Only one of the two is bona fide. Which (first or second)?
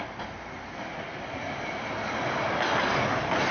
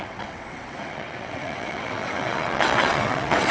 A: first